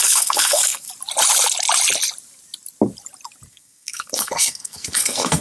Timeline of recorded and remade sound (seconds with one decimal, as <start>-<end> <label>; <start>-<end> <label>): 0.0-0.9 remade; 0.9-3.5 recorded; 3.5-5.4 remade